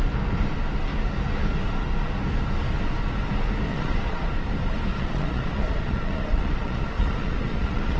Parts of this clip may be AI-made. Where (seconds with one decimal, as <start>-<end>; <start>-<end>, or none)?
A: 3.7-4.3; 4.9-8.0